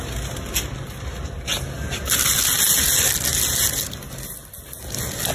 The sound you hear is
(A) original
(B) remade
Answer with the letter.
A